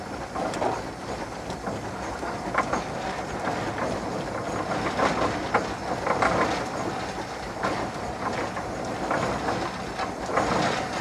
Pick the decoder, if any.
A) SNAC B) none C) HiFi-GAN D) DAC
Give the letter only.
B